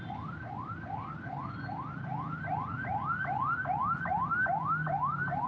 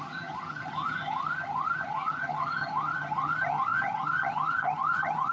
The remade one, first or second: second